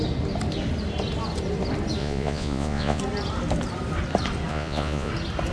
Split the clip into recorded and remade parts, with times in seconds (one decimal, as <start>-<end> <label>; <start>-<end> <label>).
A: 0.0-2.0 recorded; 2.0-3.0 remade; 3.0-4.5 recorded; 4.5-5.1 remade; 5.1-5.5 recorded

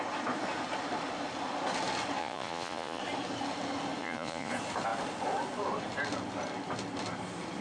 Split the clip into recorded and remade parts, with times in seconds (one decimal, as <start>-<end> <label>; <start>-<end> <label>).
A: 0.0-2.2 recorded; 2.2-3.0 remade; 3.0-4.0 recorded; 4.0-4.5 remade; 4.5-7.6 recorded

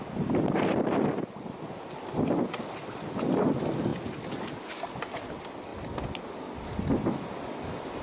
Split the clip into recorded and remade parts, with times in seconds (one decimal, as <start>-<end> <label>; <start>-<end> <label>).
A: 0.0-8.0 recorded

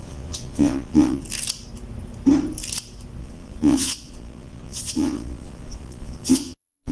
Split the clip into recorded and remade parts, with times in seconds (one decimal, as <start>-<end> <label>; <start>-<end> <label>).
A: 0.0-1.2 remade; 1.2-3.2 recorded; 3.2-6.9 remade

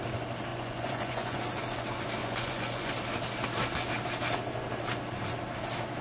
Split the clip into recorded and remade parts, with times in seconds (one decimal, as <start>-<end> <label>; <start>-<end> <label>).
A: 0.0-0.5 recorded; 0.5-1.4 remade; 1.4-2.2 recorded; 2.2-2.9 remade; 2.9-6.0 recorded

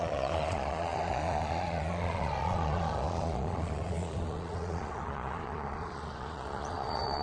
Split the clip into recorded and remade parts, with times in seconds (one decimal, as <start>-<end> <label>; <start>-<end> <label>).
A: 0.0-7.2 remade